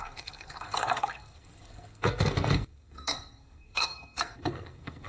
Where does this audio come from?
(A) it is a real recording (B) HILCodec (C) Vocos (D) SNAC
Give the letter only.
D